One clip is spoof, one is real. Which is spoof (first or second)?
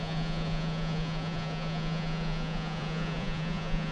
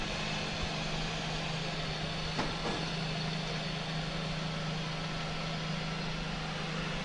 first